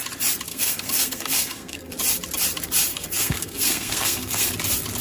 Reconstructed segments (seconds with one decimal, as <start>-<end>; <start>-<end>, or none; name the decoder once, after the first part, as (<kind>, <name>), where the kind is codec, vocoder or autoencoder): 0.5-1.9 (codec, SNAC); 2.9-4.5